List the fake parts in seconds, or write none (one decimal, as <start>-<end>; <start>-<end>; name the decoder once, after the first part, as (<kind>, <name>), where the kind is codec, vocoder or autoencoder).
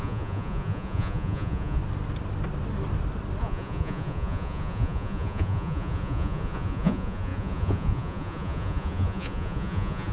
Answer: 0.0-1.8 (vocoder, Vocos); 3.4-10.1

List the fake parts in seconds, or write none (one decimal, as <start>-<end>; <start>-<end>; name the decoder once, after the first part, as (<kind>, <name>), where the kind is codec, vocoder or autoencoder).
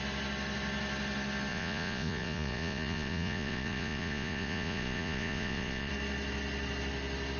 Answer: 1.5-5.9 (vocoder, Vocos)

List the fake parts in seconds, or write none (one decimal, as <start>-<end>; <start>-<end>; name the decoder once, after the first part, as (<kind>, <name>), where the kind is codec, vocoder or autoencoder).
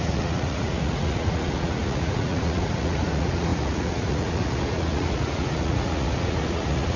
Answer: 0.0-7.0 (vocoder, Vocos)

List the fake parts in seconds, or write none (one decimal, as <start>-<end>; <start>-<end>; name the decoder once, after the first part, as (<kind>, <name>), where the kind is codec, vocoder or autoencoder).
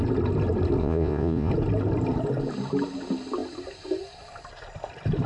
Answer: 0.8-1.5 (vocoder, Vocos)